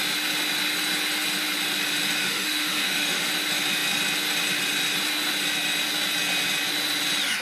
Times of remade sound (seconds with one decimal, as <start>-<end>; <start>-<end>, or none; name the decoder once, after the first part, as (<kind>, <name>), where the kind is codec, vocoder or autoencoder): 2.2-3.3 (autoencoder, DAC-VAE)